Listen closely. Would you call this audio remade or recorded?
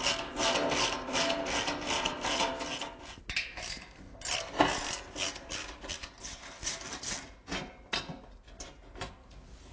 recorded